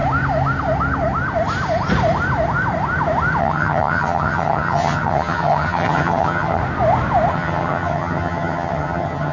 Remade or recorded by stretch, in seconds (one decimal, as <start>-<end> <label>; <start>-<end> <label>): 0.0-3.4 recorded; 3.4-6.6 remade; 6.6-7.3 recorded; 7.3-9.3 remade